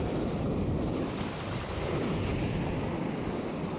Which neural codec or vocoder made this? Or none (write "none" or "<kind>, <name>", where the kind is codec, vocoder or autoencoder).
none